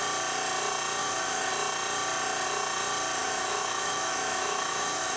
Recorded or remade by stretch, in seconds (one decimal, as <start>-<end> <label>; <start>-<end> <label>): 0.0-1.0 recorded; 1.0-1.5 remade; 1.5-3.2 recorded; 3.2-5.2 remade